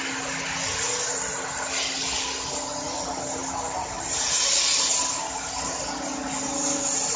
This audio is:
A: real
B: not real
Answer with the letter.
A